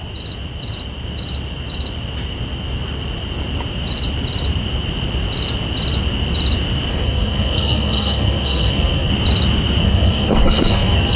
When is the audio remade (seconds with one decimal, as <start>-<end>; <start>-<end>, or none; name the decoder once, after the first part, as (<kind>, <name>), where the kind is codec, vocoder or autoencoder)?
6.9-9.1 (codec, SNAC); 9.8-11.2